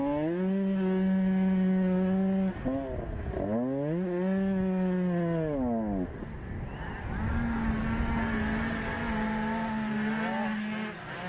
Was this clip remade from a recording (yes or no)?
no